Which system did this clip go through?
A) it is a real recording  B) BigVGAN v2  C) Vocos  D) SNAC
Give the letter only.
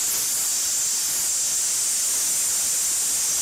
A